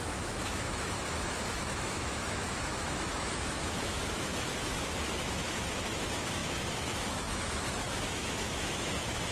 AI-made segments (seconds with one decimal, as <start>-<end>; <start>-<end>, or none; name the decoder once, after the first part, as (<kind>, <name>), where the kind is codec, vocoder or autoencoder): 0.0-9.3 (autoencoder, DAC-VAE)